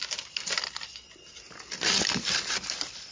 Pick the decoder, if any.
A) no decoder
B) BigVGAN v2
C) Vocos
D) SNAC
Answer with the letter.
B